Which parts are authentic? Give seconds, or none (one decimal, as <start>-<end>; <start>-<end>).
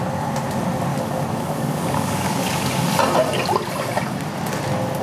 0.0-0.9; 2.9-5.0